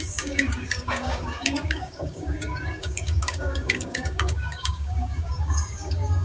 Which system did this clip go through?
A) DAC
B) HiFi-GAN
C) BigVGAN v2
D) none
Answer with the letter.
A